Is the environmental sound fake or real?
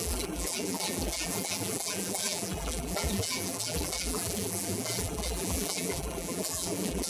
fake